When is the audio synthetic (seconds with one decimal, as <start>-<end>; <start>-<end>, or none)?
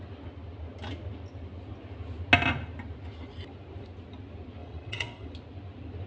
4.6-5.3